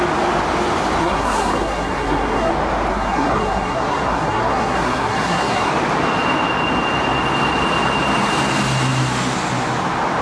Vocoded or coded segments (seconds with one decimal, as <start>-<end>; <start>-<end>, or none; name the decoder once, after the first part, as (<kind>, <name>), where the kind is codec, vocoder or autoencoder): 1.0-2.5 (codec, SNAC); 2.9-5.7